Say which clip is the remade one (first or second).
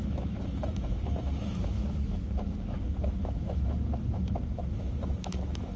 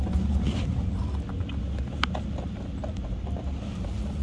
first